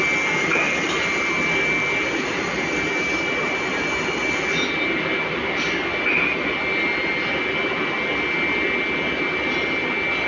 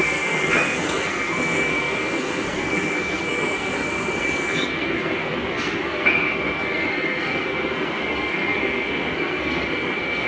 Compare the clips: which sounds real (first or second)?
first